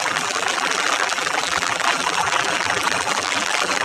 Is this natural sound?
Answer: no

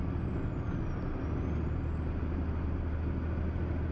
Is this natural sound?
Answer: yes